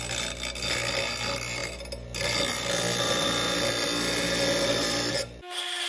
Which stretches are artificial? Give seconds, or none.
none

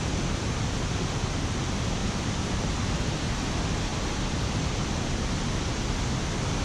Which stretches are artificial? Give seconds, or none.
2.0-2.8 (vocoder, BigVGAN v2); 3.9-4.5

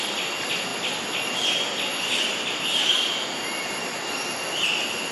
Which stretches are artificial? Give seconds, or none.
none

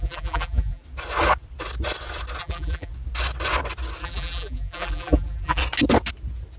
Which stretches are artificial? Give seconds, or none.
0.0-0.8 (vocoder, BigVGAN v2); 2.4-2.9; 4.0-5.6

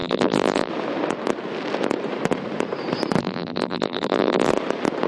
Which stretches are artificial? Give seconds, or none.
0.0-0.7 (vocoder, BigVGAN v2); 3.2-4.5